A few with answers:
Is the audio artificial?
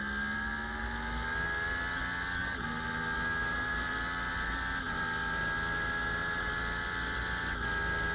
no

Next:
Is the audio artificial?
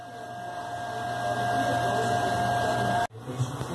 no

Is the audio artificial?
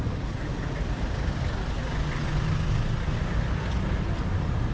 no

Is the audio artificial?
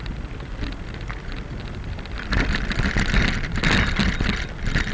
no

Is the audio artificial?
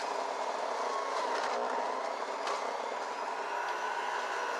no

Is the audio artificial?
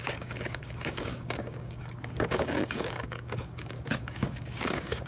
yes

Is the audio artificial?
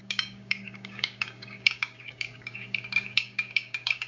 yes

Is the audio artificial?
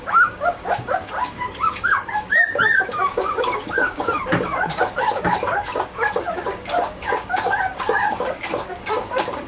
yes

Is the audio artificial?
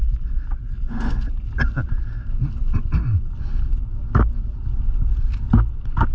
no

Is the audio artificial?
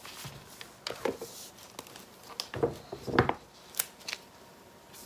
no